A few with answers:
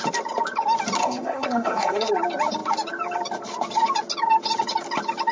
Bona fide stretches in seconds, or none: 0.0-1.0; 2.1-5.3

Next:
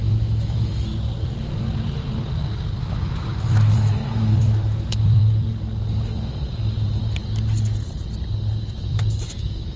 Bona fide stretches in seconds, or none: 0.9-2.8; 5.2-8.6